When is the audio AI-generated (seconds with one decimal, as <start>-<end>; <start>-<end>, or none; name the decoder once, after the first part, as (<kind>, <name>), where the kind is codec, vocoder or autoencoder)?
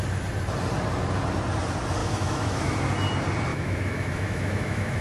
2.0-2.8 (autoencoder, DAC-VAE); 3.5-5.0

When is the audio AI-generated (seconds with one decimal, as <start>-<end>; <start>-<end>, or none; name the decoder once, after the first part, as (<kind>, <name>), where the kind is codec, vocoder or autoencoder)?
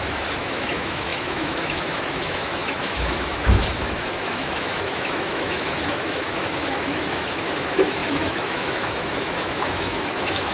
0.0-10.5 (autoencoder, DAC-VAE)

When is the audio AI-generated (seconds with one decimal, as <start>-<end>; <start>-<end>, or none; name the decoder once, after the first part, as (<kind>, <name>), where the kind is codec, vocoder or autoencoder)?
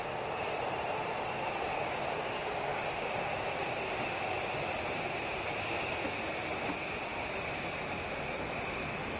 none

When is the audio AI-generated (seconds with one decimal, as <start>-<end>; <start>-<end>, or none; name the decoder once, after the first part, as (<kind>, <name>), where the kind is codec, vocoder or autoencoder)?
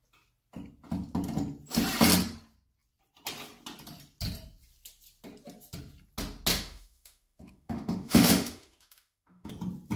6.5-9.5 (autoencoder, DAC-VAE)